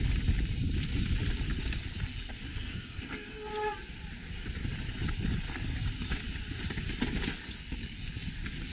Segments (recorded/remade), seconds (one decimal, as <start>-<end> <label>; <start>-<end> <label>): 0.0-2.5 recorded; 2.5-3.5 remade; 3.5-8.7 recorded